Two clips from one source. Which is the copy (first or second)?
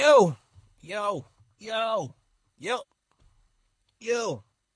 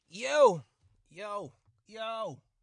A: first